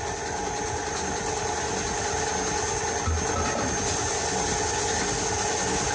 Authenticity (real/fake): real